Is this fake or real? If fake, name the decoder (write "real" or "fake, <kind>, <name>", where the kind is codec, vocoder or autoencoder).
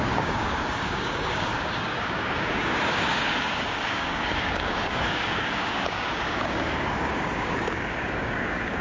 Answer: fake, codec, DAC